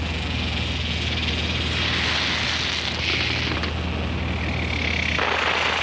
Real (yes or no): yes